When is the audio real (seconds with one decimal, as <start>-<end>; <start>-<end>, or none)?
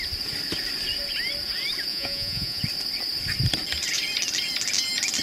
0.0-1.9; 2.6-5.2